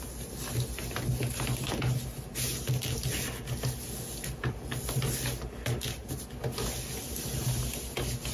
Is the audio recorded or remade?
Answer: recorded